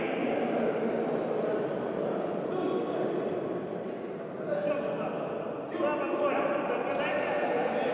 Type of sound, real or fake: real